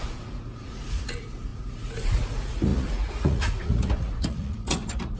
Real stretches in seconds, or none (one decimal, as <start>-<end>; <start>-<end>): none